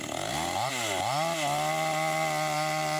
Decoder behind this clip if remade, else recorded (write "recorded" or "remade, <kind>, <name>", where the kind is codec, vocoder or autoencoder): recorded